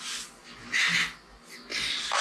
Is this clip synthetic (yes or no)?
no